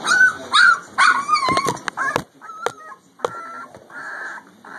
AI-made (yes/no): no